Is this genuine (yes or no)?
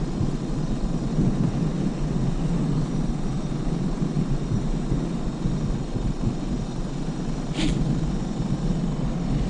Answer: yes